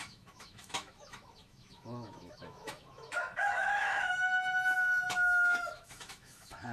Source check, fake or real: fake